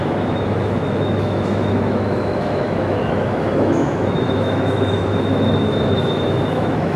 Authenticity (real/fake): fake